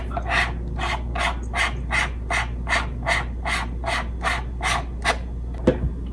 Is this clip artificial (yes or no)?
no